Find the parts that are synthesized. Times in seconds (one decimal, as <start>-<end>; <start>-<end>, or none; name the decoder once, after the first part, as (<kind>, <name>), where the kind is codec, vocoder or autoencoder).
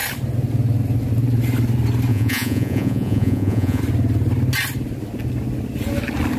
2.1-3.8 (vocoder, Vocos)